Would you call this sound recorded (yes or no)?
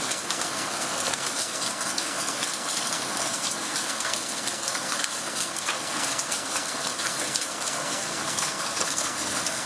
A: no